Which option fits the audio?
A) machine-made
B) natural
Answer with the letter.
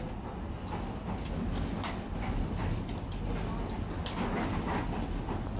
B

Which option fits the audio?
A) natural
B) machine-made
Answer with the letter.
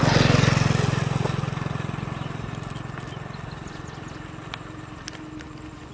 A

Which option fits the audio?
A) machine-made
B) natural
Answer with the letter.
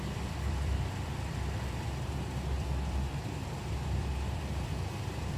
A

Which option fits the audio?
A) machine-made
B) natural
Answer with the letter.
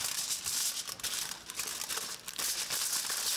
B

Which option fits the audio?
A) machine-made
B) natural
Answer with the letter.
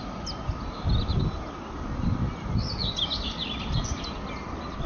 B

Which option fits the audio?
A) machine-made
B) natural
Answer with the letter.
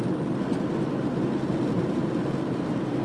B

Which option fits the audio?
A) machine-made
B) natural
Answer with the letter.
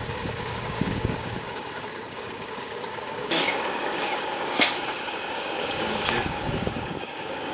A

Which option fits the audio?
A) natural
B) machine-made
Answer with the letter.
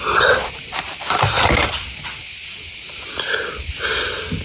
A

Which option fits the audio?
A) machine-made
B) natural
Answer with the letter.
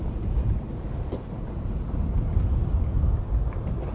B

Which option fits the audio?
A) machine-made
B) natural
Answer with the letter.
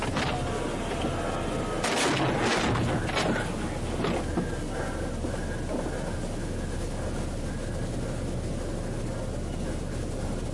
B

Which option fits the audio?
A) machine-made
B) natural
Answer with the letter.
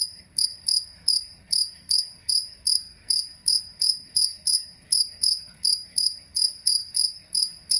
A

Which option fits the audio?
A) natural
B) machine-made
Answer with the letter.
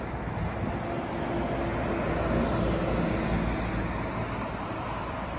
A